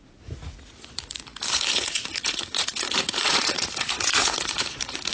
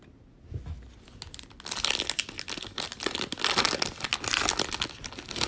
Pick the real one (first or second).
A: second